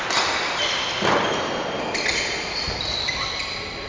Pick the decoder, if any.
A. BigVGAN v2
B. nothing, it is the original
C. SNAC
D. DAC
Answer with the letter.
B